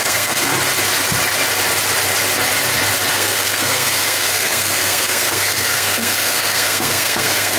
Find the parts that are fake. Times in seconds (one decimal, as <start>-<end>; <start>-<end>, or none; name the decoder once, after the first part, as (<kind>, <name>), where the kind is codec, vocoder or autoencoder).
0.0-0.5 (codec, SNAC); 3.1-7.6